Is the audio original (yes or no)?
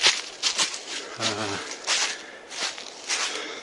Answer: yes